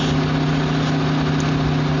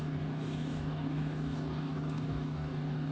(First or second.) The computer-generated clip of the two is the second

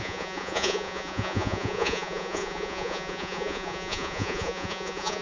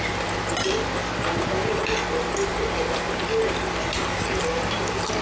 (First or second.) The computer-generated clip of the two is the first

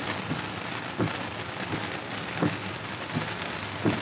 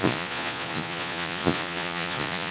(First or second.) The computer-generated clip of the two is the second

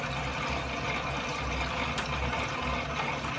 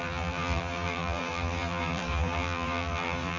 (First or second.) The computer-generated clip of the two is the second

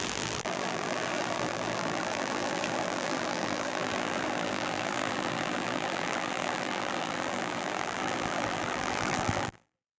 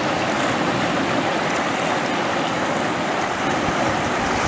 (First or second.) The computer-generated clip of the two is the first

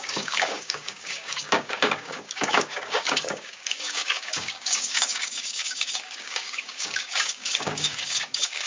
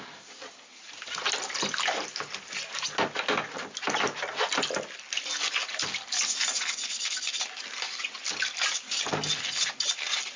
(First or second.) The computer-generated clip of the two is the first